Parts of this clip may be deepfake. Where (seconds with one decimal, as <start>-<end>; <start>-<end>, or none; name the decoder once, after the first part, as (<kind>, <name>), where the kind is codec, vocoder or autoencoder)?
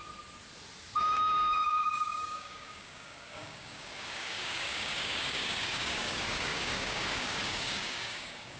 1.0-8.6 (codec, DAC)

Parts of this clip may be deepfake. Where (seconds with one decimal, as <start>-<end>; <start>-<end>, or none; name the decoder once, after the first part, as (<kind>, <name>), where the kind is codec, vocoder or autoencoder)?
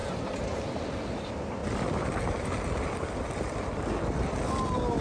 none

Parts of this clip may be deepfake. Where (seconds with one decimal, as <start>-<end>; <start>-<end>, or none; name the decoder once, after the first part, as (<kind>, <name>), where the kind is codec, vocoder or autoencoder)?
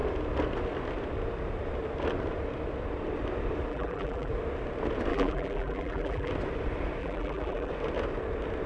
3.7-4.3 (vocoder, BigVGAN v2); 5.1-6.3; 7.0-7.7